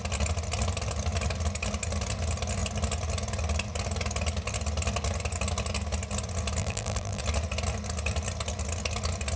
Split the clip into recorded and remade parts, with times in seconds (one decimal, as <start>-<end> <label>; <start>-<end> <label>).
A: 0.0-6.6 recorded; 6.6-7.2 remade; 7.2-9.4 recorded

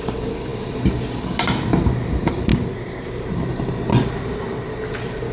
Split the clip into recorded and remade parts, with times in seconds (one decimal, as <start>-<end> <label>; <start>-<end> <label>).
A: 0.0-2.5 recorded; 2.5-3.5 remade; 3.5-5.3 recorded